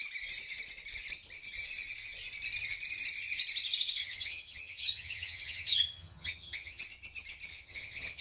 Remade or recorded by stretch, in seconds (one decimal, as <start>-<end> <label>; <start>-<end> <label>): 0.0-4.0 recorded; 4.0-6.8 remade; 6.8-7.5 recorded; 7.5-8.2 remade